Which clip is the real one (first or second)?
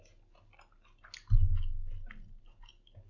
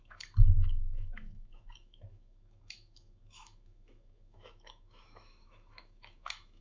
first